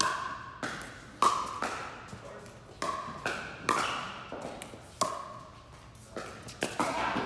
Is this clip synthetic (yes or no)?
no